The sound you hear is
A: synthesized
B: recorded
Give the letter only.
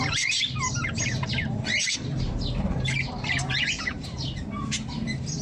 A